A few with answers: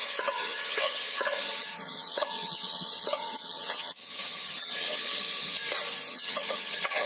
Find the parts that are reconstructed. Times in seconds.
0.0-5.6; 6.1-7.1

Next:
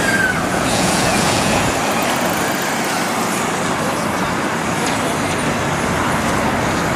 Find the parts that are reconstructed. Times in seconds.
0.5-1.6

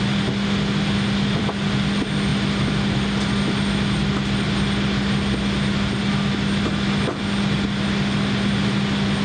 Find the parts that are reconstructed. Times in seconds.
none

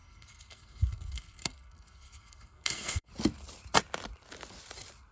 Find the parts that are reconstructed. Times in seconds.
0.0-3.1

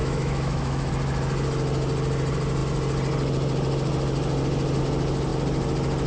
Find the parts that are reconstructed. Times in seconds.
0.0-0.9

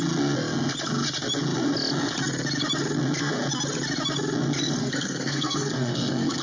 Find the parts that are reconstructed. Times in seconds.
4.8-6.4